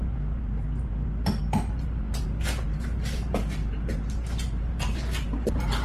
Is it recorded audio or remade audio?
recorded